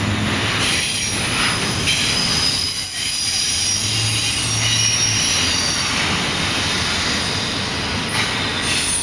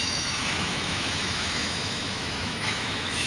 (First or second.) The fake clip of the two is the second